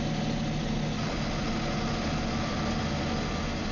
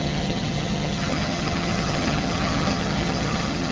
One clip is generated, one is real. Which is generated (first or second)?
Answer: second